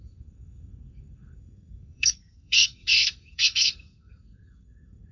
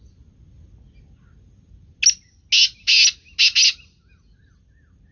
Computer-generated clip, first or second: first